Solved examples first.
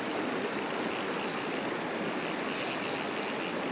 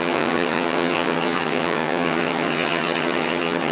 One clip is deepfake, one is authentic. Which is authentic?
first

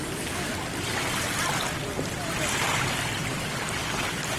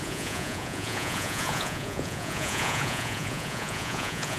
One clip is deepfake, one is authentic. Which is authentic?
first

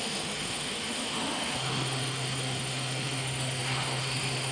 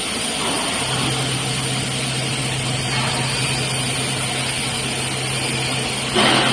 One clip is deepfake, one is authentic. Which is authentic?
second